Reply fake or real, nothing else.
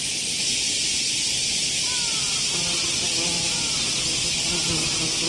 real